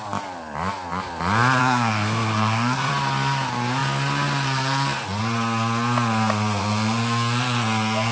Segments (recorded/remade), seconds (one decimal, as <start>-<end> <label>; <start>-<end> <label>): 0.0-1.6 recorded; 1.6-2.9 remade; 2.9-8.1 recorded